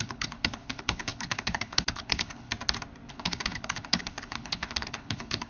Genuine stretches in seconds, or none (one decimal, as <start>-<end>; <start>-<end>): 2.5-3.1